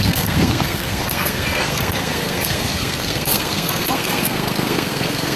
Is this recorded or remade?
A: remade